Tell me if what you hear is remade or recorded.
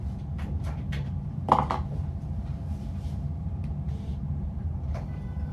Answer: remade